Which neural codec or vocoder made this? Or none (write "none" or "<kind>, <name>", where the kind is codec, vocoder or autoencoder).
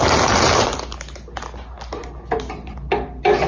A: none